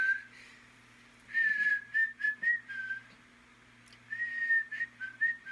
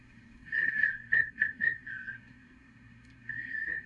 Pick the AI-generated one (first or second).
second